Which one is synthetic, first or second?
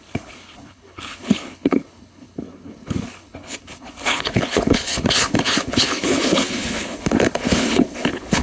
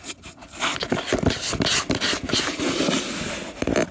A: first